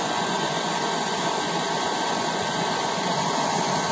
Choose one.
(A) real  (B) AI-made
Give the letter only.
B